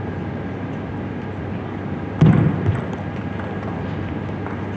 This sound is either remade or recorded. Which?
recorded